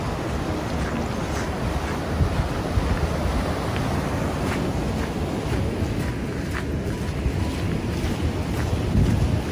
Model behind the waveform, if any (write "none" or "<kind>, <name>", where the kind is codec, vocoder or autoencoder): none